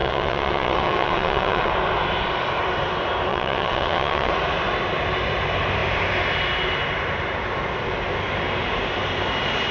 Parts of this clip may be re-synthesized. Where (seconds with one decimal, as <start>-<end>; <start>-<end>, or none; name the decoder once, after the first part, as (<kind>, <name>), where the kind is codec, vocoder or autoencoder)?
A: 0.0-1.7 (vocoder, WaveNeXt); 3.3-4.3